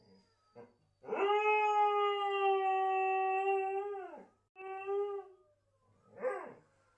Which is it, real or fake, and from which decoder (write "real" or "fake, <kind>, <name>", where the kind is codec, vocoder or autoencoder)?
real